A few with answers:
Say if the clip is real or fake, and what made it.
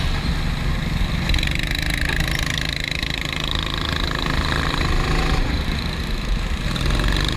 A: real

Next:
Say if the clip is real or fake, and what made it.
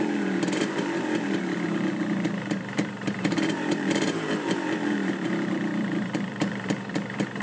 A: fake, vocoder, BigVGAN v2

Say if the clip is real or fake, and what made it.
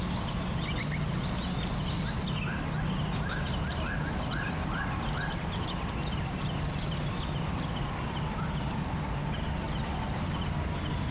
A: real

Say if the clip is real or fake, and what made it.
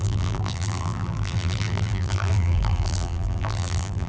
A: fake, vocoder, BigVGAN v2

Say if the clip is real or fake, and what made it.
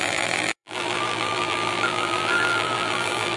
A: fake, vocoder, BigVGAN v2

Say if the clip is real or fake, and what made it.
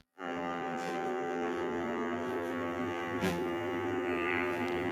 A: fake, vocoder, BigVGAN v2